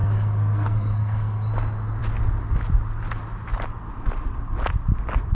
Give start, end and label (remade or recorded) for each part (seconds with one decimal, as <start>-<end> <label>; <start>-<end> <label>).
0.0-1.5 remade; 1.5-5.3 recorded